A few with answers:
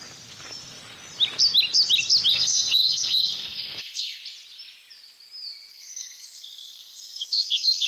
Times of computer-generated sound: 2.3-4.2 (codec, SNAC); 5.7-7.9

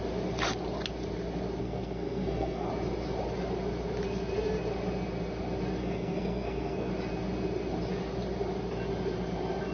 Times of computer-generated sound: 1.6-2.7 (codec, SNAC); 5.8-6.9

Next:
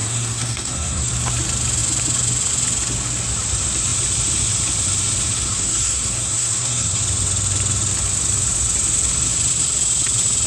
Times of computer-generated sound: 0.0-1.1 (codec, SNAC); 5.5-7.0

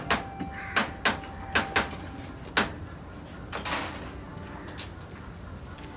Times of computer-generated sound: none

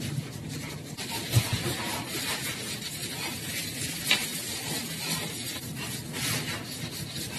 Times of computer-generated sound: none

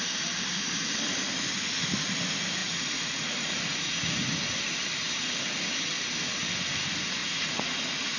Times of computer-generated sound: 2.6-4.4 (vocoder, Vocos); 7.2-8.2

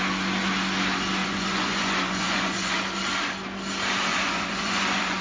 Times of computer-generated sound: 1.2-2.8 (vocoder, Vocos); 4.1-5.2